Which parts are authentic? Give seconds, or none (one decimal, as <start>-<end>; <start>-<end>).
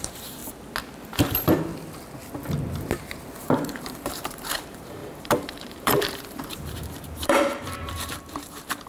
0.4-0.9; 1.7-3.4